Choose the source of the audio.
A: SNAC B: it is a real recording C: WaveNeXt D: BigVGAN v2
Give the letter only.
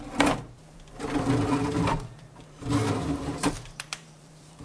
D